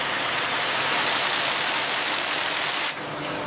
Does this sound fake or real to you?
real